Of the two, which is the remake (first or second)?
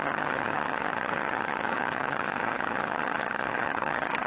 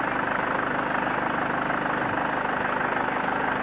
first